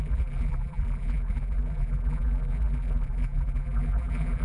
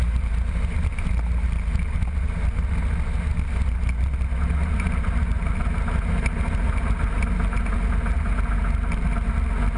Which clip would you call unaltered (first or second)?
second